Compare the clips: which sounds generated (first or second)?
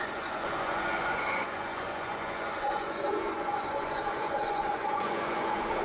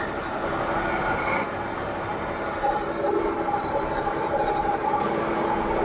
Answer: first